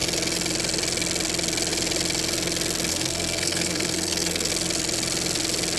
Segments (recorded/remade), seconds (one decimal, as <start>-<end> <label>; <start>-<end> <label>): 0.0-2.9 recorded; 2.9-4.5 remade; 4.5-5.8 recorded